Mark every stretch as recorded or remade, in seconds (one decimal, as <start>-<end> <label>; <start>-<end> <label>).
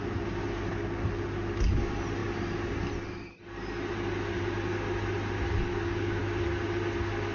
0.0-5.7 recorded; 5.7-6.2 remade; 6.2-7.3 recorded